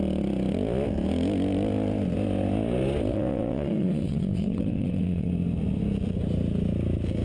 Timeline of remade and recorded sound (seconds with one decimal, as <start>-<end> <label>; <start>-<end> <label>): 0.0-3.1 recorded; 3.1-5.3 remade; 5.3-7.2 recorded